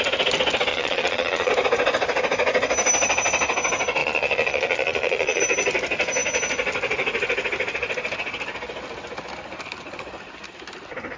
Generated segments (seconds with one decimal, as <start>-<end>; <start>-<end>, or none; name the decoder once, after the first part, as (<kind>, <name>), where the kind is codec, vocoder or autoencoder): 0.7-1.5 (vocoder, Vocos); 4.0-5.4